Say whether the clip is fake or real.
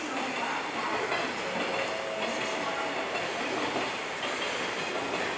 real